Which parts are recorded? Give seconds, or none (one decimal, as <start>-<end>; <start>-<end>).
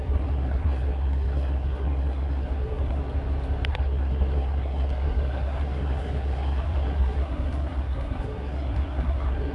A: 3.0-3.7